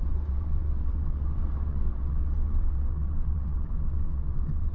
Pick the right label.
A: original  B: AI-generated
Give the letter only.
B